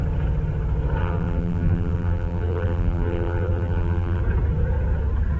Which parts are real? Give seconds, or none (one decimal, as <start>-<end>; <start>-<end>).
0.0-1.0; 4.2-5.4